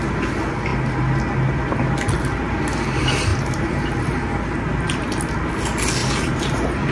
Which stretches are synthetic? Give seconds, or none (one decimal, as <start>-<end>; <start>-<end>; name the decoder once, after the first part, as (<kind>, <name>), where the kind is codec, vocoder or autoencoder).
3.3-4.3 (vocoder, BigVGAN v2); 4.7-5.5; 6.0-6.9